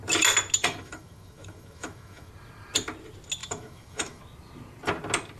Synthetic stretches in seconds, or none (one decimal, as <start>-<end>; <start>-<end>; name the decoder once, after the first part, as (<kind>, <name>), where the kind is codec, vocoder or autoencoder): 0.6-2.3 (autoencoder, DAC-VAE); 3.4-4.2

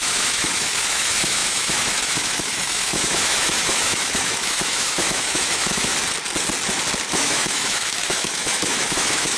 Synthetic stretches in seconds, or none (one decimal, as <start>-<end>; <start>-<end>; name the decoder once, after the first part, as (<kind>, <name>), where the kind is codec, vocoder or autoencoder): 0.0-5.9 (autoencoder, DAC-VAE); 7.1-9.4

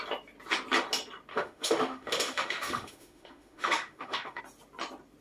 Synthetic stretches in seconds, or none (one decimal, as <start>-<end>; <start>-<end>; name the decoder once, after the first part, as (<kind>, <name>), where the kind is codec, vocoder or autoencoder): 1.3-4.4 (autoencoder, DAC-VAE)

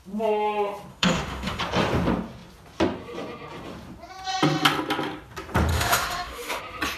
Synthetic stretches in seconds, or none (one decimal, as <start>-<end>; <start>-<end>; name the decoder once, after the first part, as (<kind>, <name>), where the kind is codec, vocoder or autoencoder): 0.9-1.6 (autoencoder, DAC-VAE); 5.7-6.6